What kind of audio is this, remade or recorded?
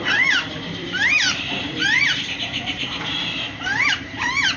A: remade